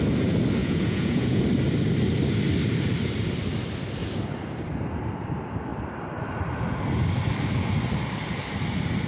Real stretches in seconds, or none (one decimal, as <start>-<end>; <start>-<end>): 0.0-0.6; 1.4-9.1